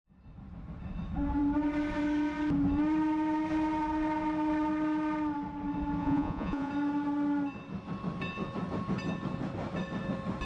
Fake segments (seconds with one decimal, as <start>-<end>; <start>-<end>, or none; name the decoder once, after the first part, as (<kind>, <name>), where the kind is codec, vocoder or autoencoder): 6.0-6.7 (vocoder, Vocos)